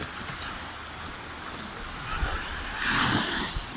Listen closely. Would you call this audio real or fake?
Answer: real